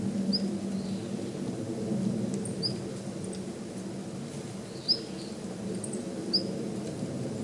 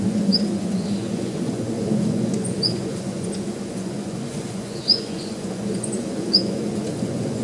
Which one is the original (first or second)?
first